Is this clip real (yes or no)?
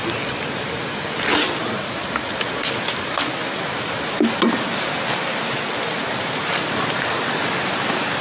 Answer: yes